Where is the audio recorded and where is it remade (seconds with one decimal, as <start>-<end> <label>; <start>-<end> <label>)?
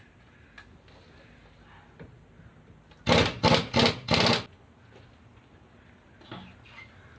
0.0-7.2 recorded